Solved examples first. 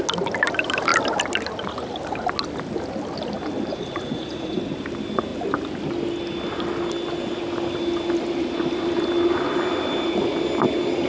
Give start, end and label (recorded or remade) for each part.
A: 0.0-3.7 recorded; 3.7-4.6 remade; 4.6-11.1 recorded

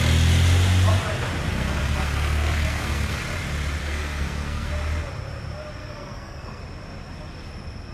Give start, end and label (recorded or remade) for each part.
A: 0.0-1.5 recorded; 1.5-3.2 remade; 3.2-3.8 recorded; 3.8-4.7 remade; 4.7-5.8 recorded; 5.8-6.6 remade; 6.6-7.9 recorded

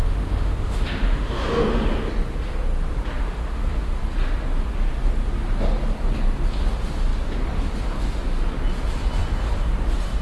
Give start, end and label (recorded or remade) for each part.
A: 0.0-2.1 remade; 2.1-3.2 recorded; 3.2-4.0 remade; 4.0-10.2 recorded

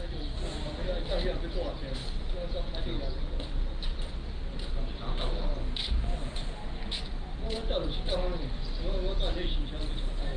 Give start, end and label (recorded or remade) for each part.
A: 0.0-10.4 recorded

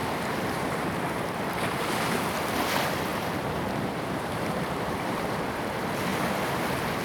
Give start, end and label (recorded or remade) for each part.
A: 0.0-1.9 remade; 1.9-3.1 recorded; 3.1-5.5 remade; 5.5-7.0 recorded

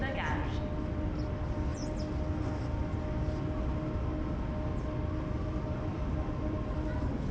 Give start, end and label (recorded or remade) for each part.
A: 0.0-7.3 recorded